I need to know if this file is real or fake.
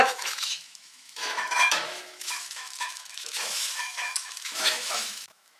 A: fake